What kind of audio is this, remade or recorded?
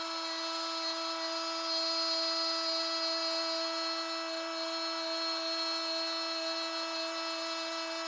recorded